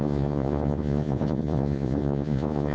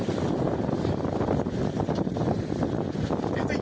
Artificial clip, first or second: first